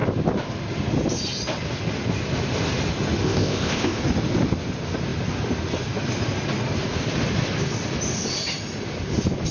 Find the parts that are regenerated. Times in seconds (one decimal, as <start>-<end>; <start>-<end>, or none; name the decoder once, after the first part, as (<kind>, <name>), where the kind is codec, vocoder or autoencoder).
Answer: 3.2-4.0 (codec, ZipCodec)